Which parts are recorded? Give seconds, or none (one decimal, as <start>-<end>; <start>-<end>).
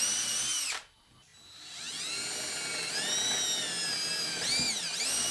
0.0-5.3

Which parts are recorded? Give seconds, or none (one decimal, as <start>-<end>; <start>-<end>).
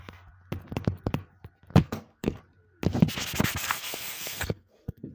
0.0-1.8; 2.4-3.6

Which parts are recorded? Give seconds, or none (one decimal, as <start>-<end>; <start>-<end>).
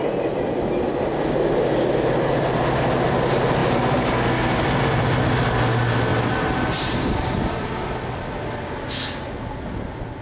0.0-10.2